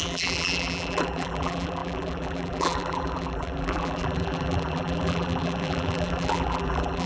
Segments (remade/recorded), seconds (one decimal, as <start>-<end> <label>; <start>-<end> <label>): 0.0-7.1 remade